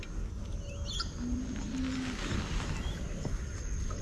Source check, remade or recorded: recorded